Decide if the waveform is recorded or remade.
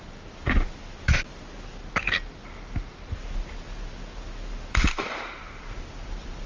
recorded